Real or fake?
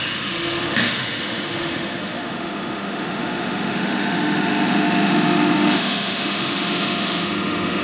fake